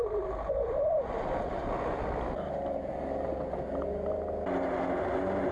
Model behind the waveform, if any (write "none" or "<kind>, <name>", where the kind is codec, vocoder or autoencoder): none